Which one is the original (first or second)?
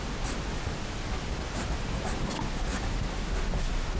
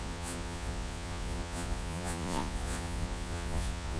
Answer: first